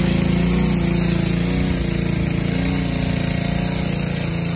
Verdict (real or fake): real